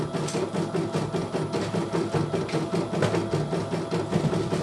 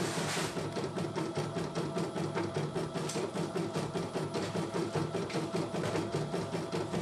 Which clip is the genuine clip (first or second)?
first